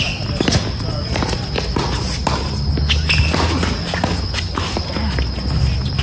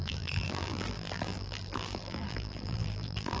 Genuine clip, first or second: first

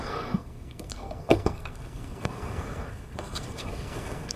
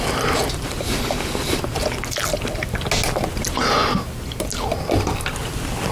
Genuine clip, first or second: second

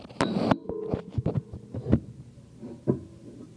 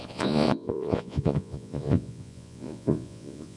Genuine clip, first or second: first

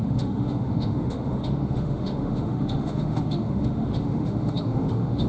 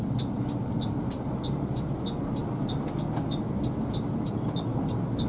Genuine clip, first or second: second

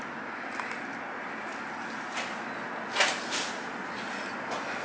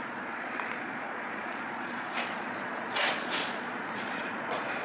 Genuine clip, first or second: first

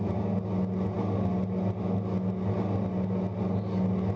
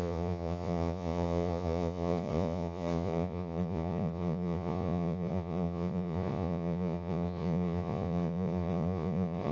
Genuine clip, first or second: first